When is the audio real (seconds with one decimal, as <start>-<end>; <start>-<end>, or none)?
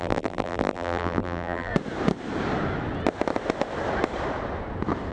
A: 1.7-5.1